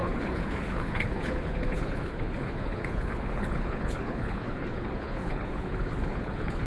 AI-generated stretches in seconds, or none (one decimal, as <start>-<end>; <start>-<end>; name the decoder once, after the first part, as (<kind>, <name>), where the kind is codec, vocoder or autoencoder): 0.0-6.7 (codec, HILCodec)